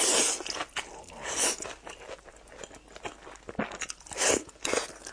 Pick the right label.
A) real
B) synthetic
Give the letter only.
A